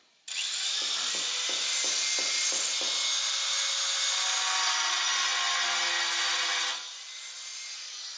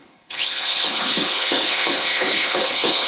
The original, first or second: first